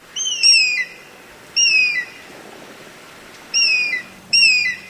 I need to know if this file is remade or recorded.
remade